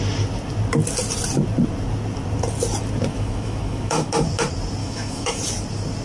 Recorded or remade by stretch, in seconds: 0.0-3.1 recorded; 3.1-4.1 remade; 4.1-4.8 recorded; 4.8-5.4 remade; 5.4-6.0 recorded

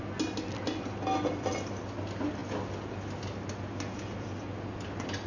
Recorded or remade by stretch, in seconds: 0.0-5.3 recorded

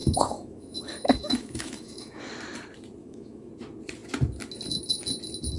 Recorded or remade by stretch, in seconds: 0.0-2.2 remade; 2.2-3.0 recorded; 3.0-3.5 remade; 3.5-5.6 recorded